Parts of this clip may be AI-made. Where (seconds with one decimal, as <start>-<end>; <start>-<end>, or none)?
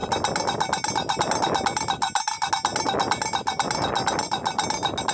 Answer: none